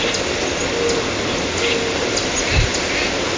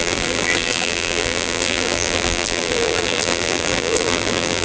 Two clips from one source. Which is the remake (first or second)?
second